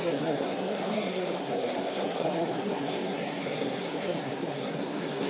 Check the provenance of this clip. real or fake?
fake